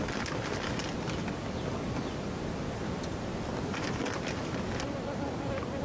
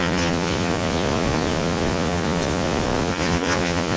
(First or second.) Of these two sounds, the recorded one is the first